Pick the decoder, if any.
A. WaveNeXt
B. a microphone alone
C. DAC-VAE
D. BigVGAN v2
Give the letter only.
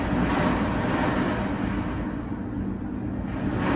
B